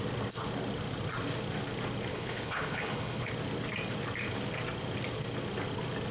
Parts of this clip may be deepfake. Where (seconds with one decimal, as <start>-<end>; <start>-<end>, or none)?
2.1-3.3